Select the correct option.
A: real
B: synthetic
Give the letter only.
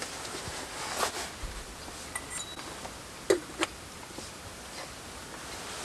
A